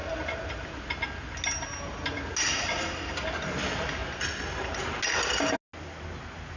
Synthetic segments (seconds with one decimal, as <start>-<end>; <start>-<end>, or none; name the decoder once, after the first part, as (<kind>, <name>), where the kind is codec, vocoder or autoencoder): none